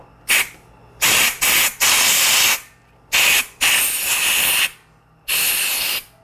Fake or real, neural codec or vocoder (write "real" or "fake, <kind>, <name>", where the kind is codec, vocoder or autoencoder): real